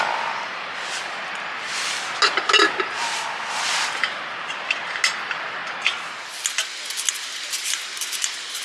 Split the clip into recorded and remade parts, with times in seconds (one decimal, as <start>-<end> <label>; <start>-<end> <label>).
0.0-8.6 recorded